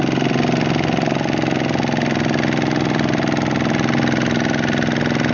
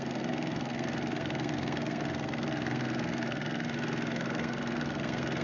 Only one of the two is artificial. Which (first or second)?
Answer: second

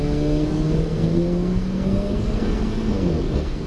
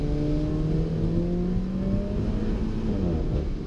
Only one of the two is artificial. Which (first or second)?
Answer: first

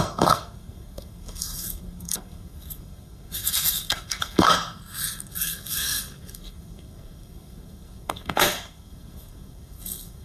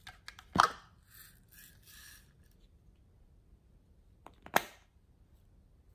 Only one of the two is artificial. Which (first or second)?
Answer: first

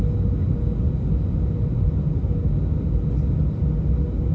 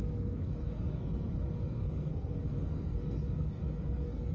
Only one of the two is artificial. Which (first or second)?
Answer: second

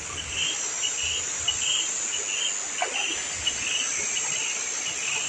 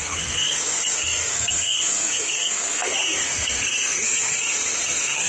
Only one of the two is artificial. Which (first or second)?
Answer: second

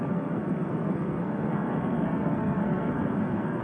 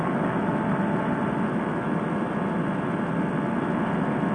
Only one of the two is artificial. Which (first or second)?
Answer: first